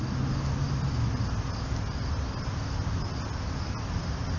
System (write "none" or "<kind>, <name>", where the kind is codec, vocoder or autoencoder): none